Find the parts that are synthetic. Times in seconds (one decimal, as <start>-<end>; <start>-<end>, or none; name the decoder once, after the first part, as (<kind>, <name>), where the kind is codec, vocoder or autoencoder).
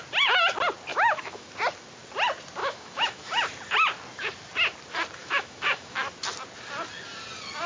0.9-1.5 (autoencoder, DAC-VAE); 2.6-3.3; 5.2-6.1